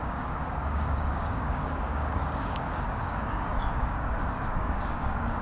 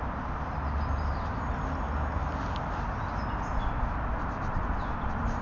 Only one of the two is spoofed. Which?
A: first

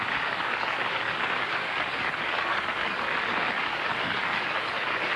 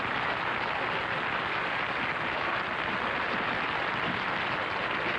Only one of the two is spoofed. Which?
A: first